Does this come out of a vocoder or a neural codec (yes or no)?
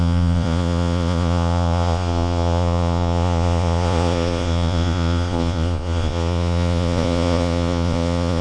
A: yes